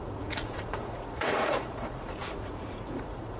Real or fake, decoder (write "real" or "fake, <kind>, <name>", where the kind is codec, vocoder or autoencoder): fake, vocoder, Vocos